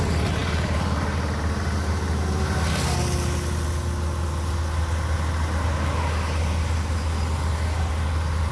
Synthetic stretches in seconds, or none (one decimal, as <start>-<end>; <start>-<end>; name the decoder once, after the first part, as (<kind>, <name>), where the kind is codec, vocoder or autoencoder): none